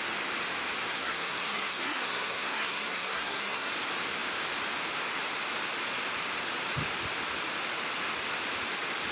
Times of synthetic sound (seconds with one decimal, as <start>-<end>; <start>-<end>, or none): 0.9-3.7